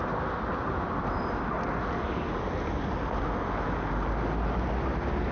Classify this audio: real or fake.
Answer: real